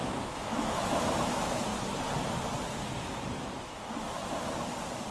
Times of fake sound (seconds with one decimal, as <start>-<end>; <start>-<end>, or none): 0.0-1.7; 3.6-4.2